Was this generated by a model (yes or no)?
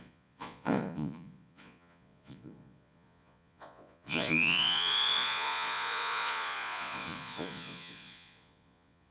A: yes